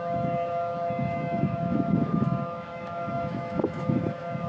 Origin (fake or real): fake